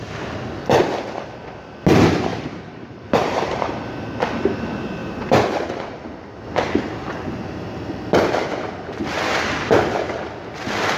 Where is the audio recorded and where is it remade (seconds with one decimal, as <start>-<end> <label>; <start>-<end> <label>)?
0.0-2.3 recorded; 2.3-3.8 remade; 3.8-5.0 recorded; 5.0-6.0 remade; 6.0-11.0 recorded